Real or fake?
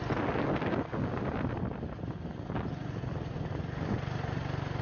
real